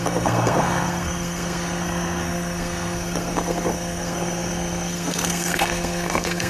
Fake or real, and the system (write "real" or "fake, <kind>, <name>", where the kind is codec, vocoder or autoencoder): fake, codec, SNAC